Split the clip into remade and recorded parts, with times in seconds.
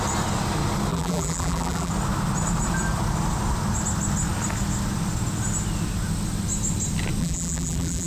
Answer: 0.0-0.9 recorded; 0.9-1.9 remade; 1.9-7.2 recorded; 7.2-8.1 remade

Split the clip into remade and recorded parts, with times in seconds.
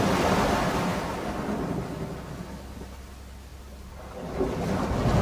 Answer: 0.0-5.2 recorded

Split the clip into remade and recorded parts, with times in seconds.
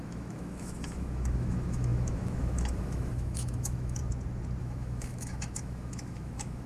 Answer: 0.0-4.0 remade; 4.0-4.6 recorded; 4.6-6.7 remade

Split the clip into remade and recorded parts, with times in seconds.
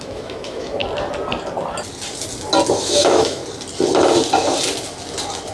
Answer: 0.0-0.8 remade; 0.8-2.8 recorded; 2.8-3.4 remade; 3.4-5.5 recorded